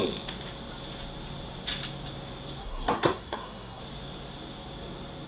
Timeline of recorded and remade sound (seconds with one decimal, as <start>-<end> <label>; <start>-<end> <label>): 0.0-2.6 recorded; 2.6-3.8 remade; 3.8-5.3 recorded